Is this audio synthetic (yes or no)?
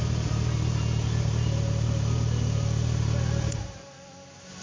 no